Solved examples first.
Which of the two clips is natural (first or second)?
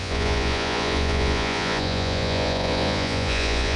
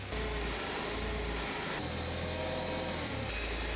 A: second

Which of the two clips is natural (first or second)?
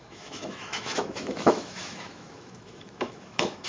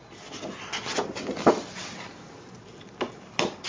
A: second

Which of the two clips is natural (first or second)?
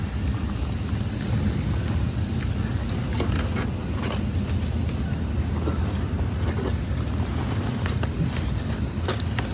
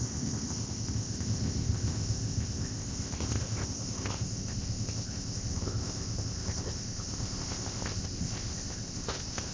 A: first